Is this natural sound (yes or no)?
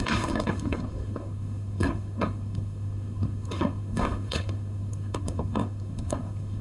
no